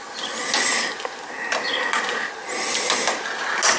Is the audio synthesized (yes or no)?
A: no